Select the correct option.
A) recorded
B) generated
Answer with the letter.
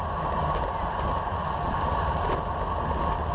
A